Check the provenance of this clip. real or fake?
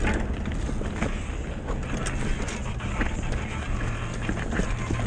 real